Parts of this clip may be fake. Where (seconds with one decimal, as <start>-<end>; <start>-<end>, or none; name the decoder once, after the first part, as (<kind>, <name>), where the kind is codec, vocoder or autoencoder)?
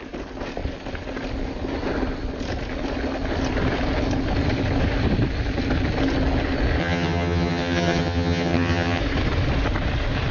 6.8-9.0 (vocoder, HiFi-GAN)